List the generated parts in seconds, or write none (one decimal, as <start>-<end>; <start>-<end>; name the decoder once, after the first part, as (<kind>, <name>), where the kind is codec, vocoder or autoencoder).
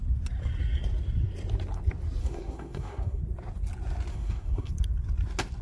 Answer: 2.2-3.2 (codec, SNAC); 4.1-4.7